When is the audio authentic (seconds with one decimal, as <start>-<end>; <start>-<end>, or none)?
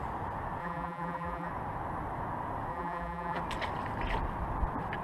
0.0-0.6; 1.5-2.7; 3.4-5.0